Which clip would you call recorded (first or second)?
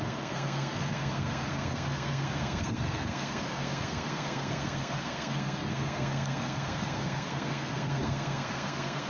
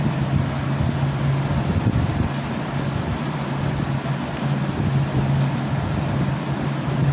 second